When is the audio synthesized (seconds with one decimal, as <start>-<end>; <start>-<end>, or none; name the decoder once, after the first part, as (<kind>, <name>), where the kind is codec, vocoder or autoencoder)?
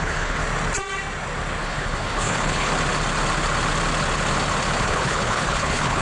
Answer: 0.0-0.4 (codec, HILCodec); 1.6-2.7; 4.8-6.0